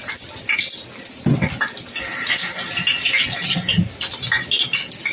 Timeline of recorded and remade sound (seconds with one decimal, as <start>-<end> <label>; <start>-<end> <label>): 0.0-5.1 recorded